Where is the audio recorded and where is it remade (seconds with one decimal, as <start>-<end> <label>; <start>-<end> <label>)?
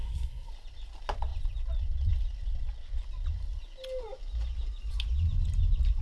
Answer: 0.0-0.5 remade; 0.5-6.0 recorded